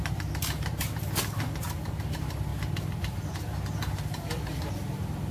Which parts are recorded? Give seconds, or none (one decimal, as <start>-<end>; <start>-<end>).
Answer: 0.0-5.3